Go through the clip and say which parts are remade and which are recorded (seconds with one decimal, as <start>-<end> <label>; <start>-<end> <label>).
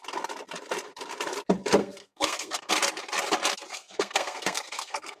0.0-1.8 recorded; 1.8-2.7 remade; 2.7-3.7 recorded; 3.7-5.2 remade